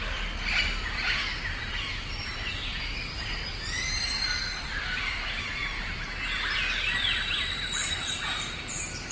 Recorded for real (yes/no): no